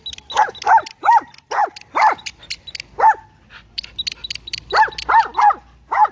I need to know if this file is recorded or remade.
recorded